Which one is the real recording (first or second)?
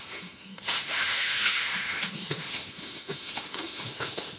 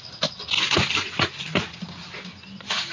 second